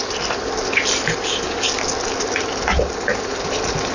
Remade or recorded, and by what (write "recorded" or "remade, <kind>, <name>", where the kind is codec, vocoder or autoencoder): recorded